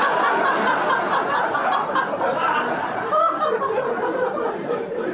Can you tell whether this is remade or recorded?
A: recorded